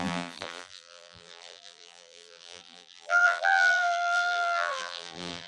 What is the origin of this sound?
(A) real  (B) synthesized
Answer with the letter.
B